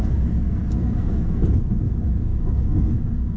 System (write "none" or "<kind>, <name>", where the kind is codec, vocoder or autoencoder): codec, SNAC